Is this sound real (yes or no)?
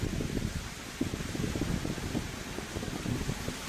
yes